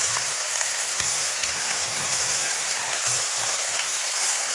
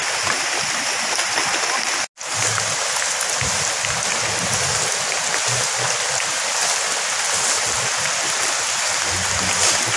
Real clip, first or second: second